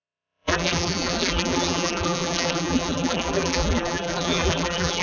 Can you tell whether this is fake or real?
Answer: fake